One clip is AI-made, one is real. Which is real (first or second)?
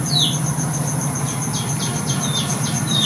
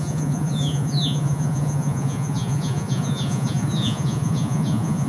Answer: first